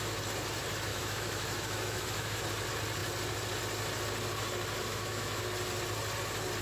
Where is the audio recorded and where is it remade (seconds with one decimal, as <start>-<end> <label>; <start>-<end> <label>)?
0.0-0.9 recorded; 0.9-2.4 remade; 2.4-4.9 recorded; 4.9-5.4 remade; 5.4-6.6 recorded